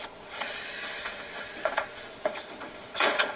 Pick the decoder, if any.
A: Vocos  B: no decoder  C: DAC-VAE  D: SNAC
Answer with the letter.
A